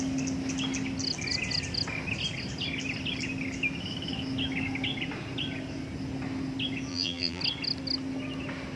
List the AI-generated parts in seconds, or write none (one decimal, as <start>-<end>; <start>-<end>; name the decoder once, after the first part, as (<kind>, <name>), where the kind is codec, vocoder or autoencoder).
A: 6.9-7.4 (vocoder, BigVGAN v2)